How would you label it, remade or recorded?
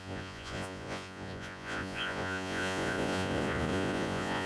remade